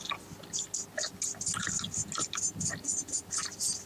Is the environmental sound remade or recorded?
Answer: recorded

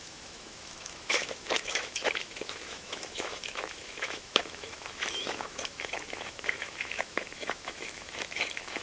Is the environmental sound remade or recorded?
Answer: remade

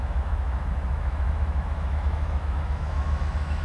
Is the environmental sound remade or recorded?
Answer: remade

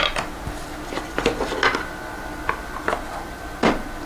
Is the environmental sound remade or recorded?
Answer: recorded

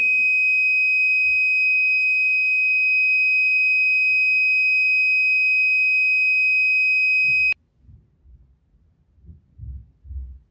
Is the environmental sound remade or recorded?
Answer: recorded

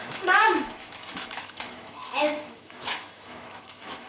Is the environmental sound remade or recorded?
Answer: remade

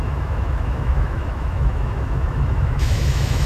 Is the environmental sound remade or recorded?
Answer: remade